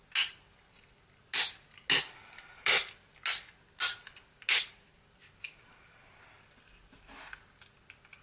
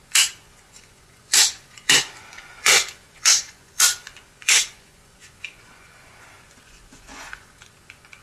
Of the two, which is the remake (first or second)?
second